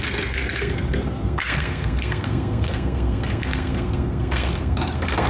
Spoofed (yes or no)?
yes